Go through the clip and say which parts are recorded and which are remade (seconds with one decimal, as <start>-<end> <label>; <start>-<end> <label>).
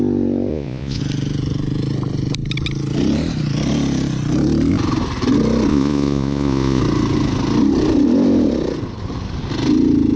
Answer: 0.0-0.5 recorded; 0.5-1.0 remade; 1.0-5.7 recorded; 5.7-6.8 remade; 6.8-10.2 recorded